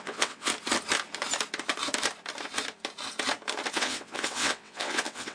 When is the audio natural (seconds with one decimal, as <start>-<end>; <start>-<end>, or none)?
0.5-3.7